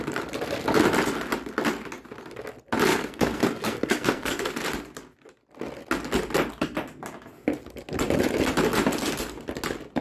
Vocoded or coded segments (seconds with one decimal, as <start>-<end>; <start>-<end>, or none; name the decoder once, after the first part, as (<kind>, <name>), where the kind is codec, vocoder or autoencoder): 2.9-4.5 (codec, SNAC)